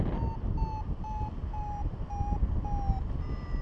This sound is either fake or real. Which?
real